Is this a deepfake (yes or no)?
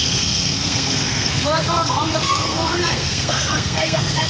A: yes